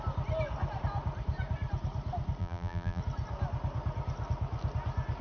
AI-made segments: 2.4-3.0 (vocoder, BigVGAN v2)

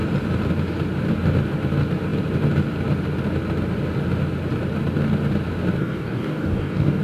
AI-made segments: 5.8-7.0 (codec, DAC)

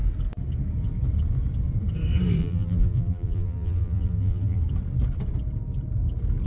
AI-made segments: 2.4-4.6 (vocoder, BigVGAN v2)

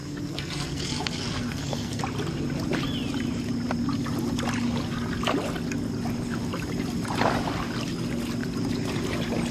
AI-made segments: 0.0-2.0 (codec, SNAC)

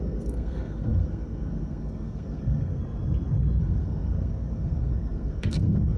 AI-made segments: 0.0-2.8 (codec, SNAC); 3.6-6.0

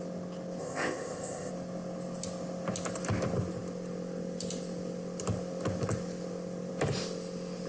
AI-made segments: 0.6-1.5 (codec, ZipCodec)